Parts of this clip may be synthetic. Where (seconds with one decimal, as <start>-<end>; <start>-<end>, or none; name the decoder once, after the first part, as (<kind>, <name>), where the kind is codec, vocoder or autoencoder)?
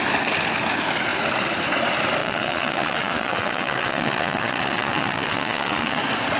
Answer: 2.2-6.0 (vocoder, Vocos)